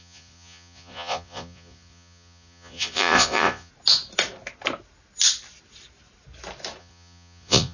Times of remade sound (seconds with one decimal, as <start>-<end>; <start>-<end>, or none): 0.0-3.7; 6.8-7.7